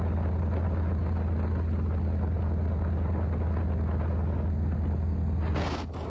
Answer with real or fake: real